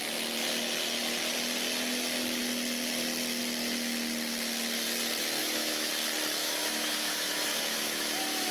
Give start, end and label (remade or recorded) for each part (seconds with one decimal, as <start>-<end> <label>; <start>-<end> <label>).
0.0-5.4 recorded; 5.4-5.9 remade; 5.9-6.4 recorded; 6.4-8.5 remade